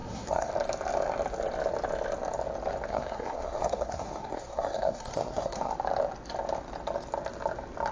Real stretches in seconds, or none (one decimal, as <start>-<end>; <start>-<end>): 0.5-2.9; 5.7-7.9